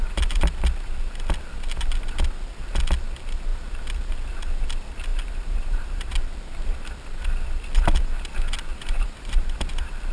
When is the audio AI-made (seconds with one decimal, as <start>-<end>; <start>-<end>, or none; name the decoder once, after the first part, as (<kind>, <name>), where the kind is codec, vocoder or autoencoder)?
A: 5.1-6.1 (vocoder, BigVGAN v2); 8.7-9.6